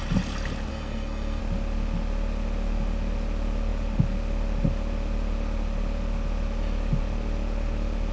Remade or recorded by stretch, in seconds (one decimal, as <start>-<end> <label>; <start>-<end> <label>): 0.0-0.7 recorded; 0.7-1.4 remade; 1.4-8.1 recorded